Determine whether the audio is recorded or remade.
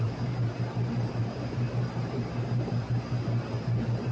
remade